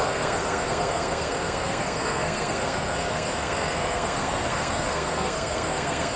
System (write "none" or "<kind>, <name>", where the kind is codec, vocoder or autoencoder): codec, SNAC